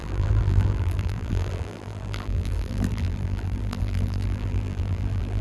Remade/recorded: remade